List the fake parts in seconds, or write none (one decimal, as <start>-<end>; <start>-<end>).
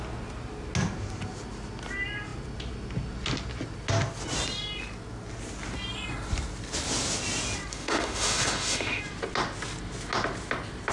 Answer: 7.7-9.0